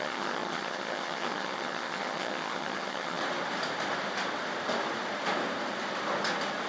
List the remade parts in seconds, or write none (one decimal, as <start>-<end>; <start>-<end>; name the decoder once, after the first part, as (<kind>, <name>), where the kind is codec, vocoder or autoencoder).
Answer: 0.0-3.2 (vocoder, HiFi-GAN)

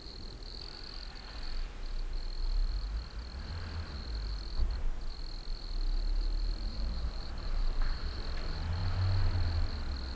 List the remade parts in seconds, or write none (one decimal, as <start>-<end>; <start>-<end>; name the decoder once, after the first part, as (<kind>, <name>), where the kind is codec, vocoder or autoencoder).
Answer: 6.7-8.2 (vocoder, BigVGAN v2)

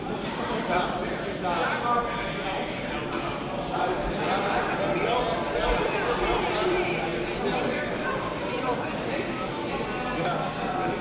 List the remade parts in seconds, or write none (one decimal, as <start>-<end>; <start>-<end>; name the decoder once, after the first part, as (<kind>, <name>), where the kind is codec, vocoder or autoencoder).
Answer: 0.0-1.0 (vocoder, BigVGAN v2); 5.7-7.1; 7.7-8.7

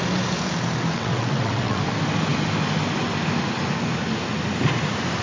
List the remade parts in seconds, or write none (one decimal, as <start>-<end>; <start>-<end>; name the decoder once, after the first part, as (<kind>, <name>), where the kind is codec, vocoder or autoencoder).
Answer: 0.9-1.8 (vocoder, WaveNeXt)

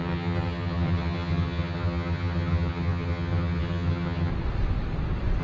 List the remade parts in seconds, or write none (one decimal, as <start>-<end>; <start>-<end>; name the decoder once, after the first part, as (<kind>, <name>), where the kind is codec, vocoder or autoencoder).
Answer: 0.0-4.3 (vocoder, HiFi-GAN)

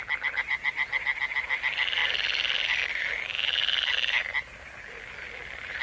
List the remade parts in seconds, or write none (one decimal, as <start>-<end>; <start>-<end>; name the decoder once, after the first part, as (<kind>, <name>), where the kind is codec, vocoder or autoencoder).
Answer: none

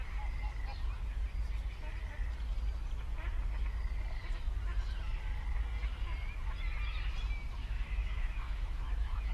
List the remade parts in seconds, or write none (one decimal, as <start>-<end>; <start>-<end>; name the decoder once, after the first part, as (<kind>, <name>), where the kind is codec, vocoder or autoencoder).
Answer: 7.6-9.3 (autoencoder, DAC-VAE)